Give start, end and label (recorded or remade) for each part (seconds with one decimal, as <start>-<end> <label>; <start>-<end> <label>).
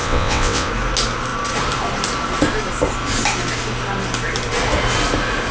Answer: 0.0-0.7 remade; 0.7-5.5 recorded